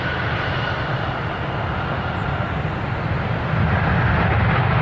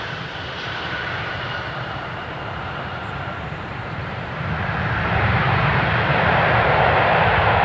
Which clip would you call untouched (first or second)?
first